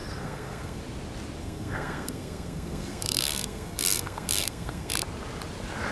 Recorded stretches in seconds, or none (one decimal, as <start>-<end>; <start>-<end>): 0.8-1.4; 4.9-5.9